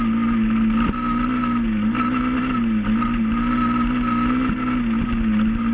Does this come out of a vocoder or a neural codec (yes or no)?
no